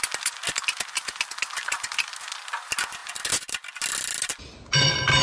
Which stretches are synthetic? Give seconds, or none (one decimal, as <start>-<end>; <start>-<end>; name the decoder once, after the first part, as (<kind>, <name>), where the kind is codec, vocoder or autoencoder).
none